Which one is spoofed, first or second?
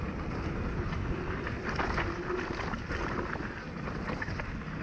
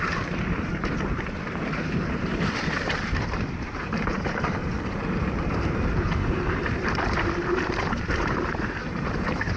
second